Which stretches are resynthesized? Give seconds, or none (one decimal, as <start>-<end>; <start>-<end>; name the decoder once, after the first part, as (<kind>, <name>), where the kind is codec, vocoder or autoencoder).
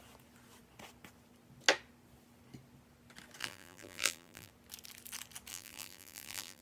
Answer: 3.4-4.5 (vocoder, BigVGAN v2); 5.5-6.6